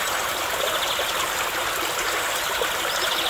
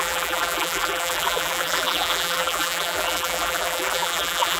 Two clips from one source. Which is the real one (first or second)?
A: first